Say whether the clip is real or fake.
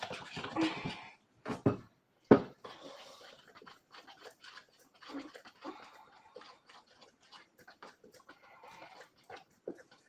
real